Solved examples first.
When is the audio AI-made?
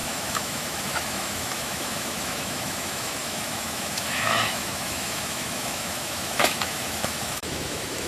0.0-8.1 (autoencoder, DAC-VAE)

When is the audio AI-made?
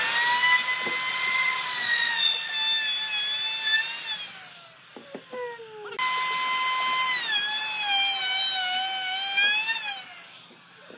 1.1-2.5 (vocoder, Vocos)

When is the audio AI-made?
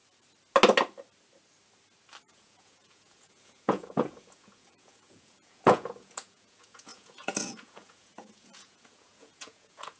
2.2-10.0 (vocoder, Vocos)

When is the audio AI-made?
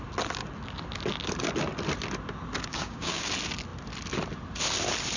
2.7-3.3 (codec, DAC)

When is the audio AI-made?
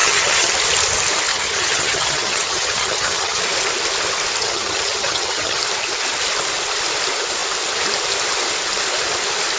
0.0-0.5 (vocoder, HiFi-GAN); 1.3-3.4; 4.4-5.6